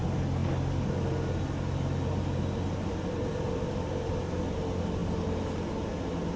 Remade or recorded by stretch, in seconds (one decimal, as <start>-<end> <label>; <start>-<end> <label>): 0.0-6.4 recorded